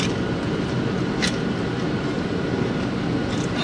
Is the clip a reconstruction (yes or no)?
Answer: no